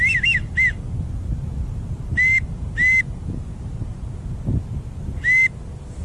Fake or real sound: real